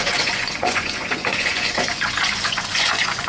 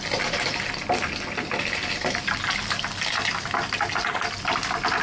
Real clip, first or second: second